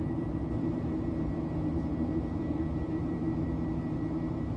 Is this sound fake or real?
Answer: fake